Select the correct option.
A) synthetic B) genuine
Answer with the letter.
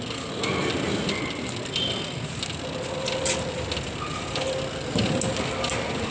B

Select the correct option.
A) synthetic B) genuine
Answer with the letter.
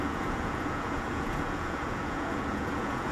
A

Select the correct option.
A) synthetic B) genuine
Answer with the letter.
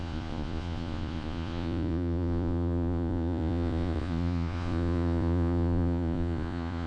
A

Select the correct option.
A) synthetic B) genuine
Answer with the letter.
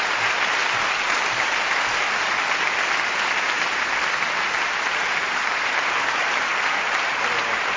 B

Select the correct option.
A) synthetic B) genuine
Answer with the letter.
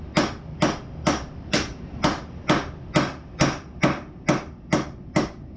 B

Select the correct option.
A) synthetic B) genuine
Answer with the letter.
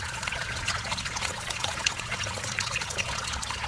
A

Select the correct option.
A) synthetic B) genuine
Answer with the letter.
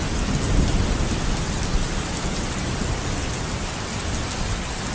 B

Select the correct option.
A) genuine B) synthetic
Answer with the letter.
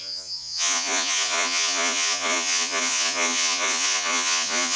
B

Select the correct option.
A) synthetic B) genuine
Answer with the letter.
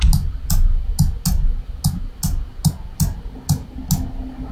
B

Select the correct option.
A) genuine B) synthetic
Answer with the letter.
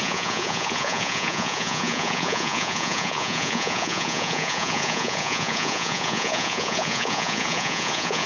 B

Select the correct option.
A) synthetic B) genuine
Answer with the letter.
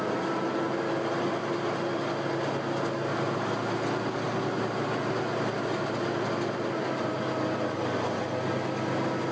B